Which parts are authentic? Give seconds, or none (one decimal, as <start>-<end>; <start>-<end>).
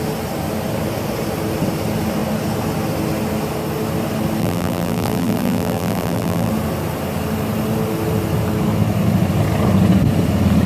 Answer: 0.0-4.4; 6.5-10.7